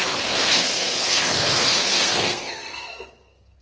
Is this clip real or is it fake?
fake